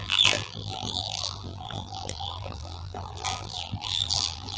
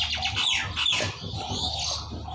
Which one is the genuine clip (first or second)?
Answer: second